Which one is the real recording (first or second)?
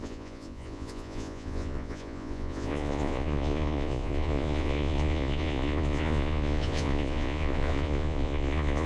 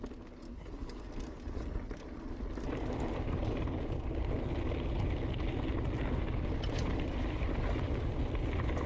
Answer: second